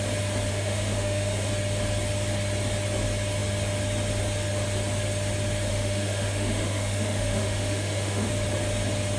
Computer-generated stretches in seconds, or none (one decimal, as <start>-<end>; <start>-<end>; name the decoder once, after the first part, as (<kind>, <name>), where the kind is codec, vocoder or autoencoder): 0.5-1.5 (autoencoder, DAC-VAE); 5.7-8.3